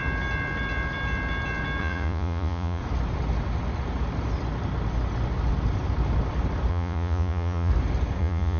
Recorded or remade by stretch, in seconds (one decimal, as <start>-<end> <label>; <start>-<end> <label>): 0.0-1.8 recorded; 1.8-2.8 remade; 2.8-6.7 recorded; 6.7-7.7 remade; 7.7-8.2 recorded; 8.2-8.6 remade